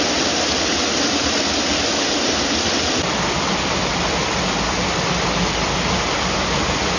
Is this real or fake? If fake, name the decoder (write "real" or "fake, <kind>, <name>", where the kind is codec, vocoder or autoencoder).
real